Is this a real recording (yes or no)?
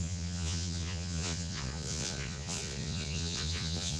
no